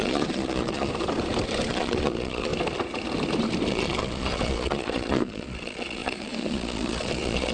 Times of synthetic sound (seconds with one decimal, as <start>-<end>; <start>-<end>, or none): 0.0-0.9; 1.7-2.5; 3.7-7.5